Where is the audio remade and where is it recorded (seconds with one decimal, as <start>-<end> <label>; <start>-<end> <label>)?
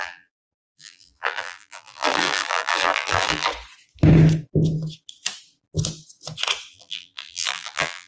0.0-3.5 remade; 3.5-6.7 recorded; 6.7-8.1 remade